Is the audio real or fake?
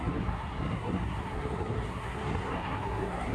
fake